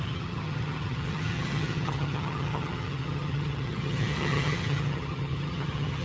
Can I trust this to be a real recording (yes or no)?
no